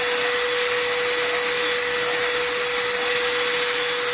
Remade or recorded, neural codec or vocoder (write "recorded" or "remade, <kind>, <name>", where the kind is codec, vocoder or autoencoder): recorded